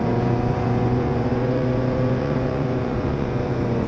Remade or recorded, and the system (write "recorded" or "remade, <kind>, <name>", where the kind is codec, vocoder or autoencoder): remade, vocoder, Vocos